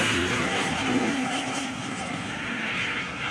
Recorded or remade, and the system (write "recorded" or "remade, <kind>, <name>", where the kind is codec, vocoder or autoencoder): remade, codec, SNAC